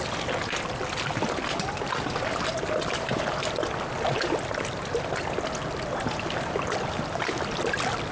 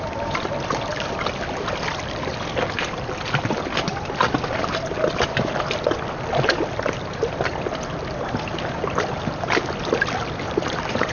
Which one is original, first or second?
first